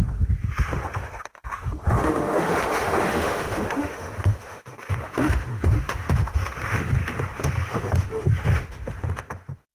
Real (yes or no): no